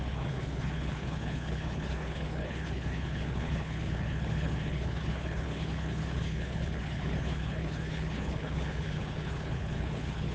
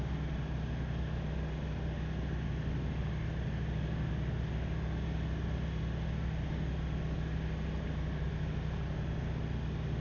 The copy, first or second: first